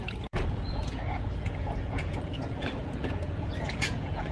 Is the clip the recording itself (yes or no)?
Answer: no